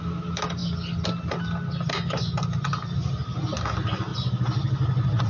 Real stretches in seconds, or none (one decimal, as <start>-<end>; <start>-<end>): 0.0-5.3